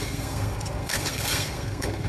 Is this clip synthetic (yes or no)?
yes